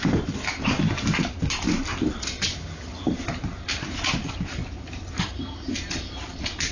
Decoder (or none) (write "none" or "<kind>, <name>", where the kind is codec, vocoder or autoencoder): none